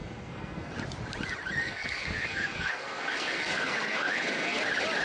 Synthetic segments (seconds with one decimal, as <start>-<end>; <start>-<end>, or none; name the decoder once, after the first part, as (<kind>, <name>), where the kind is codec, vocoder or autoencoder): 0.0-0.7 (codec, SNAC); 1.6-4.6